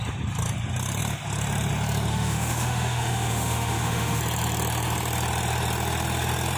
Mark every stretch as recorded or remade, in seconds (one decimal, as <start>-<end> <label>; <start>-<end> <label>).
0.0-2.1 recorded; 2.1-4.2 remade; 4.2-6.6 recorded

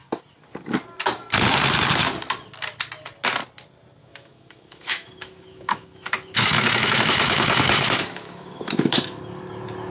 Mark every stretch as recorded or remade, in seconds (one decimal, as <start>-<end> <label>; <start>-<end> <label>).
0.0-4.0 recorded; 4.0-9.2 remade; 9.2-9.9 recorded